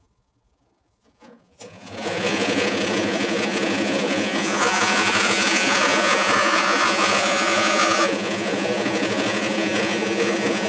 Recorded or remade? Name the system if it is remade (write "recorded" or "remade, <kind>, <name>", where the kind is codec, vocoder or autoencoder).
remade, vocoder, Vocos